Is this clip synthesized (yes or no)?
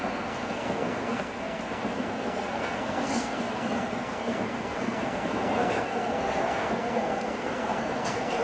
yes